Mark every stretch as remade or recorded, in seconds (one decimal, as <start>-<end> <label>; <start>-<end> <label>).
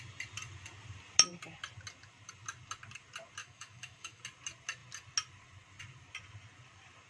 0.0-3.4 recorded; 3.4-4.2 remade; 4.2-7.1 recorded